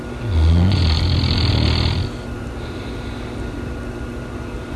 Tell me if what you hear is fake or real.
real